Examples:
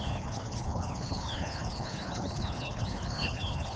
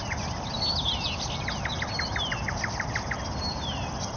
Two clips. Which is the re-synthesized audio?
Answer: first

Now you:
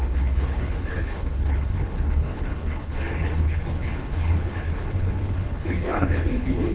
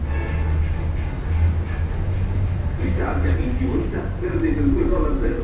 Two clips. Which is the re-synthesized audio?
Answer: first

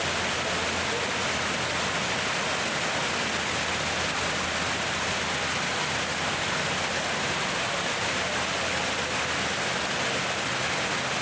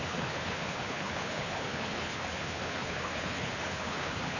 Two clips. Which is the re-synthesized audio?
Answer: second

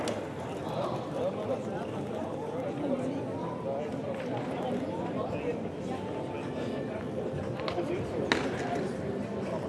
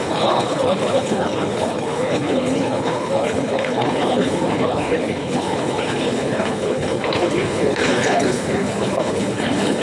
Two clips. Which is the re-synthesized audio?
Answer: second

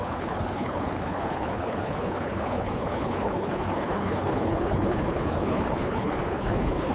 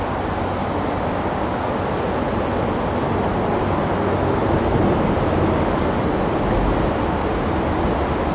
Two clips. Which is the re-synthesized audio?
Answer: first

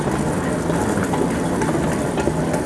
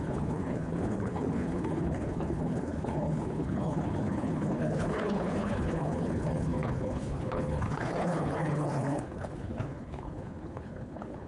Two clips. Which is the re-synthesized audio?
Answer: second